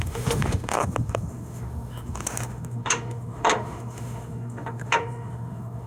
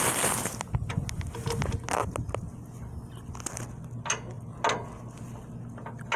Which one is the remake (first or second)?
first